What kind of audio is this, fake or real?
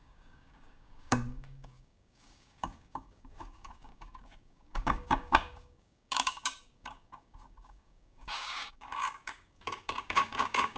fake